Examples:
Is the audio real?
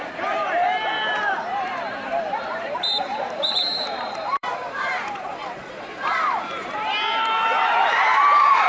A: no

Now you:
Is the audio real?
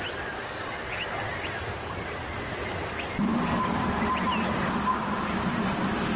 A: yes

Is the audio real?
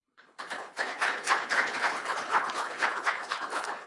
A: no